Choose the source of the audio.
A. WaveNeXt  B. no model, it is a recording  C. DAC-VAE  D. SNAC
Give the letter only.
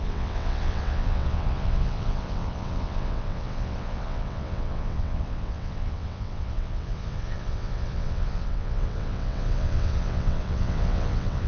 A